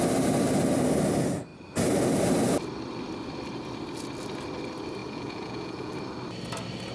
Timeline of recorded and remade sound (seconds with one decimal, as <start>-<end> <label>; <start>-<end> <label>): 0.0-5.0 recorded; 5.0-5.9 remade; 5.9-6.9 recorded